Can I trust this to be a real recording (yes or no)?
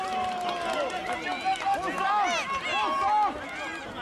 yes